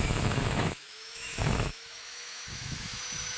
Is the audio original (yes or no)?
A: no